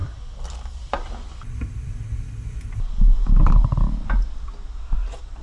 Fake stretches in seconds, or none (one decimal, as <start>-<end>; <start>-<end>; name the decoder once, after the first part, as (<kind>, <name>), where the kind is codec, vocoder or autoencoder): none